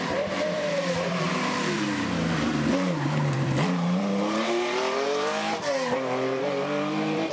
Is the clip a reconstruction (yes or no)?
yes